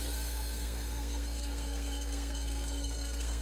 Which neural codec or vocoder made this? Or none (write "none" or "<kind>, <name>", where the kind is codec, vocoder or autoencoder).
codec, SNAC